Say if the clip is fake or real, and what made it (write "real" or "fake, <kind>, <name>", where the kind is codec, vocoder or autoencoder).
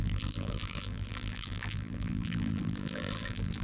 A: fake, vocoder, BigVGAN v2